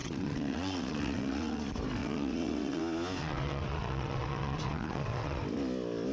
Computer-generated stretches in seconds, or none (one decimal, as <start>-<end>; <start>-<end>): 0.0-1.6; 2.0-2.8; 3.2-5.4